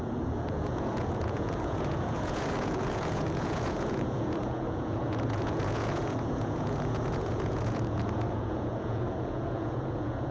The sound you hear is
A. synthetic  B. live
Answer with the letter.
A